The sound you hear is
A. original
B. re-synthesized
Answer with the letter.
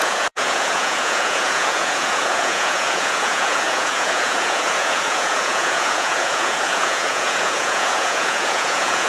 B